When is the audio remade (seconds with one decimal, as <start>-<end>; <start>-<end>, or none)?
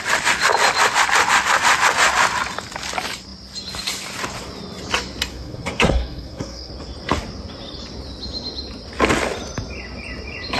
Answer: 5.3-6.7